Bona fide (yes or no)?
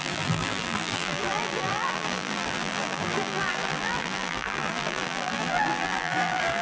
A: no